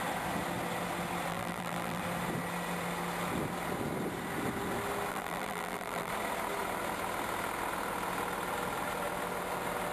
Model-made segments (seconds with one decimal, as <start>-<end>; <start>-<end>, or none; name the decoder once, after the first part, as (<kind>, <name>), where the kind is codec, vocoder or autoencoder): 1.3-2.0 (vocoder, BigVGAN v2); 5.1-6.1